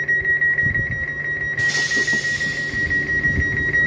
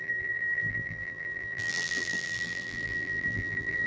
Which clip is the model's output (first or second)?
second